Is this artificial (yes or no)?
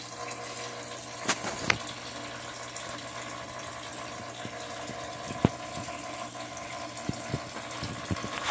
no